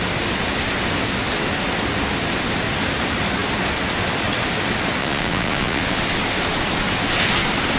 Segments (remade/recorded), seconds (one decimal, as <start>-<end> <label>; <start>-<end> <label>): 0.0-5.0 recorded; 5.0-6.0 remade; 6.0-7.8 recorded